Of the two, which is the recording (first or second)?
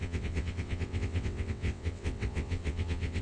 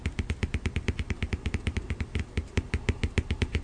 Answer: second